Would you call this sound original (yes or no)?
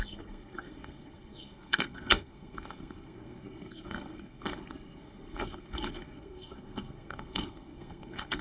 no